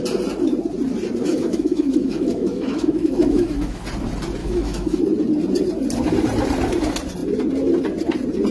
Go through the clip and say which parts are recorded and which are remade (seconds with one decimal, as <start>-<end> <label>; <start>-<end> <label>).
0.0-1.3 recorded; 1.3-3.8 remade; 3.8-4.4 recorded; 4.4-5.0 remade; 5.0-8.5 recorded